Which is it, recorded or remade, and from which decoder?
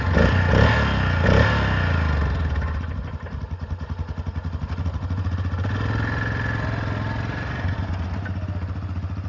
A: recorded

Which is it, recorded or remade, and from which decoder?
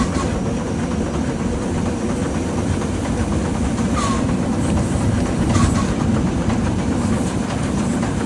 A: recorded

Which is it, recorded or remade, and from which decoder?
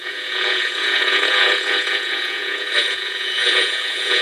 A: remade, vocoder, Vocos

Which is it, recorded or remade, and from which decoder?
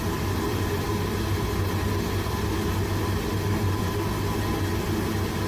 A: recorded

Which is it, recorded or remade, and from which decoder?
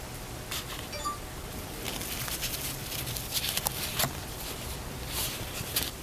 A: recorded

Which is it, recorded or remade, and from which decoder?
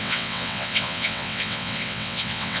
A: remade, vocoder, WaveNeXt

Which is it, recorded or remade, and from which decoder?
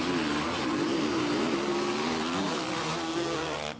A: recorded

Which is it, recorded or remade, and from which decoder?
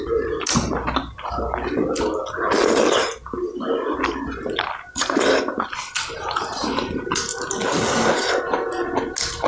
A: recorded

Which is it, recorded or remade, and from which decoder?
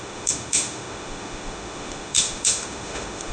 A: remade, autoencoder, DAC-VAE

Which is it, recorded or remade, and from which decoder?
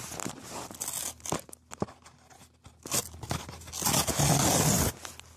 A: recorded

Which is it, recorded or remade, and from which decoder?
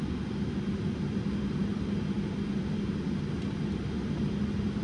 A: recorded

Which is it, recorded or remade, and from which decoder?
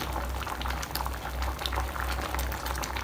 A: recorded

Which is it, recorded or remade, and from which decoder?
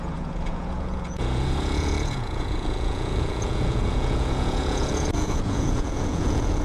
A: remade, vocoder, Vocos